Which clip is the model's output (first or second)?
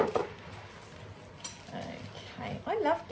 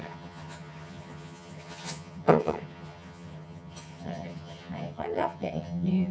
second